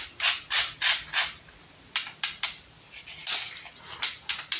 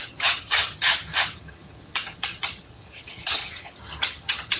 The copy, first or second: second